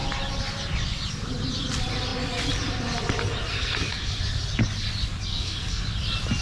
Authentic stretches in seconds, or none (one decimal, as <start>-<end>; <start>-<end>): 0.0-3.5; 4.2-5.3; 5.8-6.4